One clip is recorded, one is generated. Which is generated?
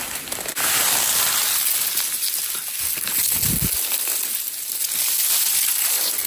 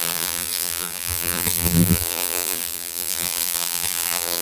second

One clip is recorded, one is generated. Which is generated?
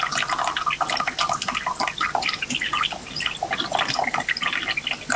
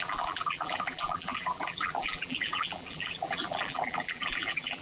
second